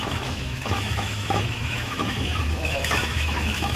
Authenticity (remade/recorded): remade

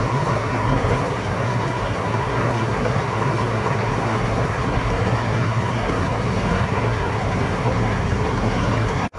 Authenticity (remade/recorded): remade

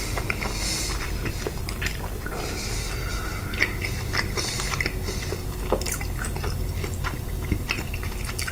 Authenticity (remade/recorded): recorded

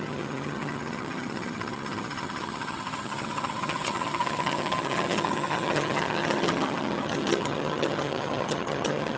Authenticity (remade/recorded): remade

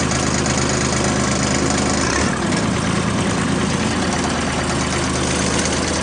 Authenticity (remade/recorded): recorded